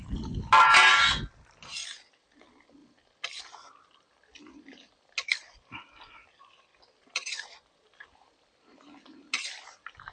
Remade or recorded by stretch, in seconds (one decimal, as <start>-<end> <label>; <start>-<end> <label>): 0.0-10.1 recorded